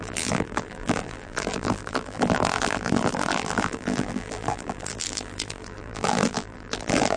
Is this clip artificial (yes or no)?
yes